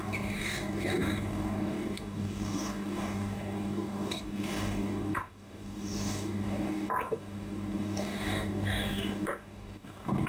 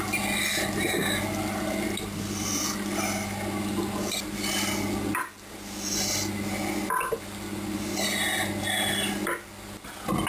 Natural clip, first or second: second